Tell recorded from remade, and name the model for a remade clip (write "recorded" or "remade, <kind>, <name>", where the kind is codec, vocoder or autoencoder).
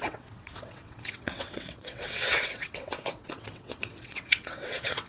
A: remade, vocoder, WaveNeXt